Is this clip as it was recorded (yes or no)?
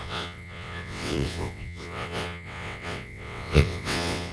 no